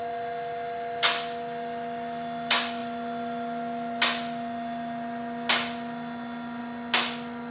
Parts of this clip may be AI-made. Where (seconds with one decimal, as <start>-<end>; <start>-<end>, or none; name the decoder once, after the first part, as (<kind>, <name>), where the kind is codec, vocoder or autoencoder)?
none